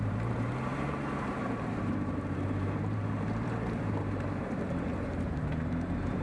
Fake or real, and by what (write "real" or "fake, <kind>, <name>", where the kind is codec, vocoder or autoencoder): fake, vocoder, BigVGAN v2